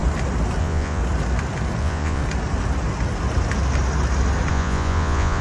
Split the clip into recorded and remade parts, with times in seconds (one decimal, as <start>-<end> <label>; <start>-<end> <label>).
0.0-0.6 recorded; 0.6-1.0 remade; 1.0-1.8 recorded; 1.8-2.2 remade; 2.2-4.5 recorded; 4.5-5.4 remade